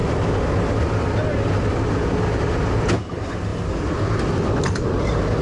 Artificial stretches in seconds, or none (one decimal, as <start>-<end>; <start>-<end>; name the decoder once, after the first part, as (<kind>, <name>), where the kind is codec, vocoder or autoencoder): 1.3-2.0 (vocoder, BigVGAN v2); 3.5-5.4